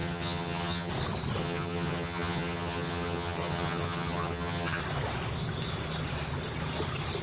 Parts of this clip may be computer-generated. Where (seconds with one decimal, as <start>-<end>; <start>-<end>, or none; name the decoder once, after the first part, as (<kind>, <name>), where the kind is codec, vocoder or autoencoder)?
0.0-0.9 (vocoder, HiFi-GAN); 1.4-4.8